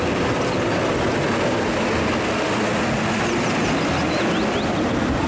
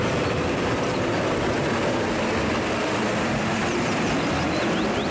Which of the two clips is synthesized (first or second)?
second